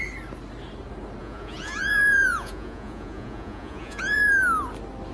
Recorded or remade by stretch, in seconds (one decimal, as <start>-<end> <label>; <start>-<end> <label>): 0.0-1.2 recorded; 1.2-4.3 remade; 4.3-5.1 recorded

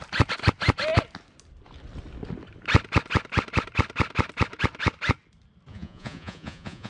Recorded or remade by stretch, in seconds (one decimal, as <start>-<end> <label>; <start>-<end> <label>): 0.0-5.7 recorded; 5.7-6.9 remade

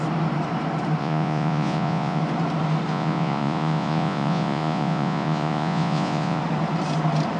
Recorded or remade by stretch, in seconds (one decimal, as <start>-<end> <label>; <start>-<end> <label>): 0.0-1.0 recorded; 1.0-2.2 remade; 2.2-2.9 recorded; 2.9-6.4 remade; 6.4-7.4 recorded

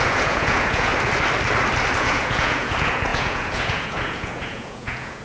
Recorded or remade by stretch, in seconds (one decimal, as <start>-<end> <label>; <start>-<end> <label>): 0.0-0.9 remade; 0.9-2.0 recorded; 2.0-5.2 remade

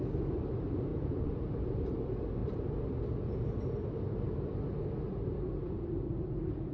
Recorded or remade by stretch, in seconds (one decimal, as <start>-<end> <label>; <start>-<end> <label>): 0.0-0.9 recorded; 0.9-1.4 remade; 1.4-6.7 recorded